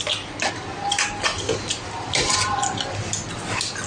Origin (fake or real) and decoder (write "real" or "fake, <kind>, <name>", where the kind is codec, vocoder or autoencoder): real